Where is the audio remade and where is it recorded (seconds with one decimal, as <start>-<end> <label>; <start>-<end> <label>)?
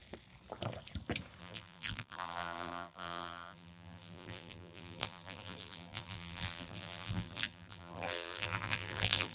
0.0-1.4 recorded; 1.4-9.3 remade